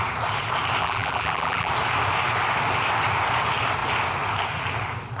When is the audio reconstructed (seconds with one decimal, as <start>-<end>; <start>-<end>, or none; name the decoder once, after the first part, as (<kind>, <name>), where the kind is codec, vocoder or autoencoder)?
0.8-1.7 (vocoder, BigVGAN v2)